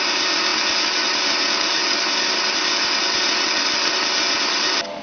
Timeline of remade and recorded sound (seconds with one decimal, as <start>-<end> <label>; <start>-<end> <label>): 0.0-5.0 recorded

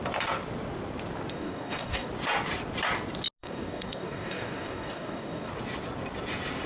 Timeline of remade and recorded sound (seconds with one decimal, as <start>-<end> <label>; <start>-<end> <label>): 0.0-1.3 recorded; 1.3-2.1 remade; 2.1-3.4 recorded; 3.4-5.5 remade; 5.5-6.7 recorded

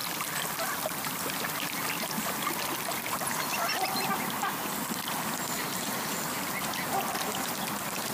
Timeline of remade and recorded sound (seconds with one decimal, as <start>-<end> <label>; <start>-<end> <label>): 0.0-8.1 recorded

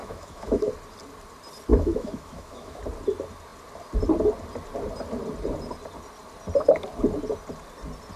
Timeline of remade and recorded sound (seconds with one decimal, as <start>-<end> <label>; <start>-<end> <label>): 0.0-0.7 remade; 0.7-1.7 recorded; 1.7-2.8 remade; 2.8-8.2 recorded